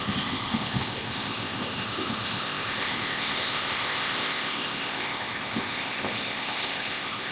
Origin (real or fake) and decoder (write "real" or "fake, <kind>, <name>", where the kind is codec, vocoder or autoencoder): fake, codec, ZipCodec